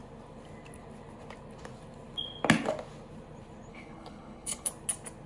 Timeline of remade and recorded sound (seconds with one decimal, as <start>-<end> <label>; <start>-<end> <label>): 0.0-3.7 recorded; 3.7-4.7 remade; 4.7-5.3 recorded